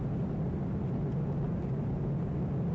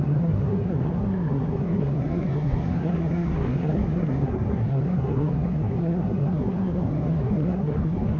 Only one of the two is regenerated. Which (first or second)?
second